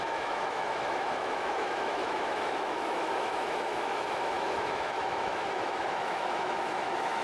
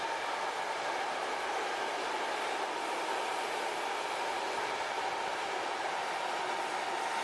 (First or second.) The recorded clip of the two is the second